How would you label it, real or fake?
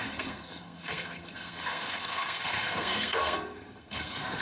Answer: fake